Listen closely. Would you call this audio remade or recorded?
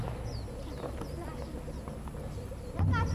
recorded